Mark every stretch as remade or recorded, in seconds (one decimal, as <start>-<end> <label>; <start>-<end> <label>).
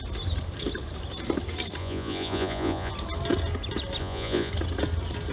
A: 0.0-1.8 recorded; 1.8-2.9 remade; 2.9-4.0 recorded; 4.0-4.5 remade; 4.5-5.3 recorded